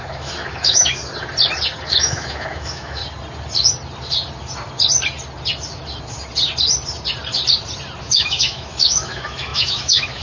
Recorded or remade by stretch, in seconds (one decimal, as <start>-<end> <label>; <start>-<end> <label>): 0.0-1.0 remade; 1.0-1.9 recorded; 1.9-3.0 remade; 3.0-8.0 recorded; 8.0-10.2 remade